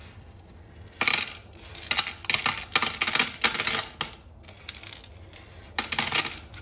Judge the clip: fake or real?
real